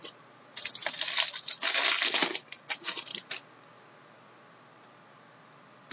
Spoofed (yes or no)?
no